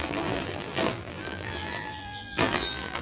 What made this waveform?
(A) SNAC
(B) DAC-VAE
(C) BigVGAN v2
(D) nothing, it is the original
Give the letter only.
C